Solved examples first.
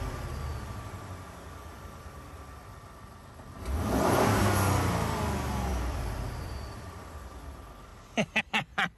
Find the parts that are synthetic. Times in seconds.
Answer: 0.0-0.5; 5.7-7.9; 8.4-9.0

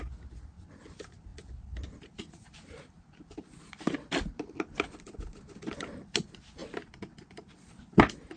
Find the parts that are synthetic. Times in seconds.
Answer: 1.3-3.6; 6.6-7.8

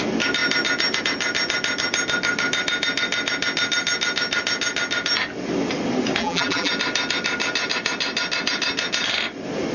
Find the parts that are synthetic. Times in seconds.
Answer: 6.2-6.7

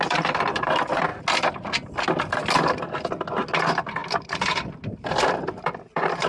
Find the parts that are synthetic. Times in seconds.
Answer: 0.0-1.1; 3.6-6.3